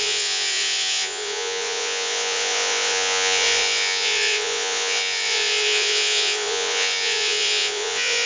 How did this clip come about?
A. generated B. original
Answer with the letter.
A